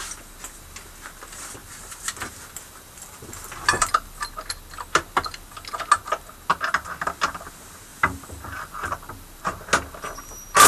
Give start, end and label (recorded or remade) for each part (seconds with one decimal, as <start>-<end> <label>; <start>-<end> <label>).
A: 0.0-1.6 recorded; 1.6-4.2 remade; 4.2-7.9 recorded; 7.9-9.4 remade; 9.4-10.7 recorded